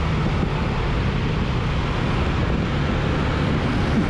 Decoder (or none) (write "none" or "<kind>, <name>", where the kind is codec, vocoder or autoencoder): none